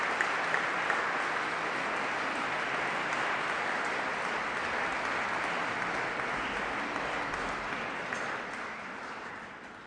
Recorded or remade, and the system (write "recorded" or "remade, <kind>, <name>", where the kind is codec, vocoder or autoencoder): recorded